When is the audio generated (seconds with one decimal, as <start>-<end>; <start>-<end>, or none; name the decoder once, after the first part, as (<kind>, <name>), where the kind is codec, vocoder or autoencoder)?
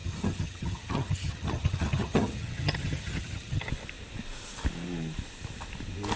0.0-3.7 (vocoder, HiFi-GAN)